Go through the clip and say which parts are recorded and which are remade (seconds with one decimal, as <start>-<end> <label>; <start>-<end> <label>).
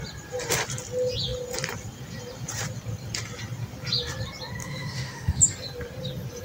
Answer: 0.0-4.6 recorded; 4.6-5.4 remade; 5.4-6.4 recorded